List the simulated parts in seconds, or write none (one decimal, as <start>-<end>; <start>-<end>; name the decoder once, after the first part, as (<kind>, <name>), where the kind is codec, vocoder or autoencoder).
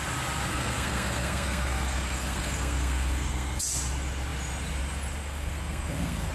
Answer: 0.5-3.6 (codec, SNAC); 5.2-6.3